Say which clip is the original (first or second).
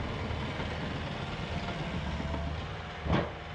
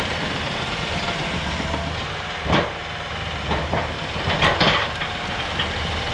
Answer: first